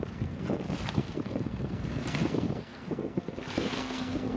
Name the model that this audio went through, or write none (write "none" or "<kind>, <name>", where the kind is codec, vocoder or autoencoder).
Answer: codec, SNAC